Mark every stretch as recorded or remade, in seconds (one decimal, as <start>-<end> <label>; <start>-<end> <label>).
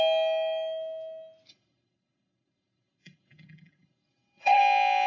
0.0-1.5 recorded; 1.5-4.6 remade; 4.6-5.1 recorded